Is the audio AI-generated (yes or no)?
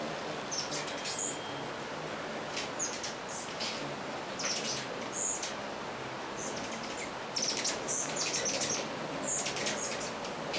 no